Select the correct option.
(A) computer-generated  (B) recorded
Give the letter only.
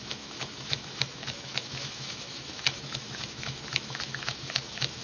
A